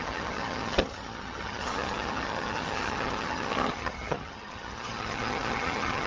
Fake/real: fake